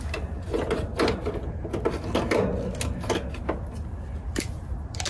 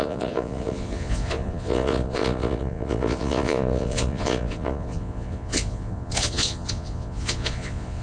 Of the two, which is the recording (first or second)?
first